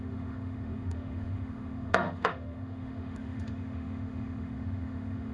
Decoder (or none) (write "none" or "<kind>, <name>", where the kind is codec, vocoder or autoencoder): autoencoder, DAC-VAE